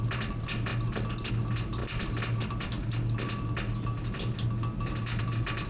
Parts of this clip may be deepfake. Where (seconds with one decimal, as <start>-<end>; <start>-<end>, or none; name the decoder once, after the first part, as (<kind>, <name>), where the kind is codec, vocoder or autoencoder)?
none